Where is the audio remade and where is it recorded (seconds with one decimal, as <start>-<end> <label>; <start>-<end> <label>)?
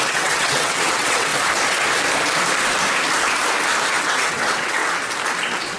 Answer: 0.0-1.3 remade; 1.3-4.0 recorded; 4.0-4.8 remade; 4.8-5.8 recorded